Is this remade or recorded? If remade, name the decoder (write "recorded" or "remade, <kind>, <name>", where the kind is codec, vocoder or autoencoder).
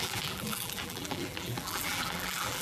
remade, vocoder, BigVGAN v2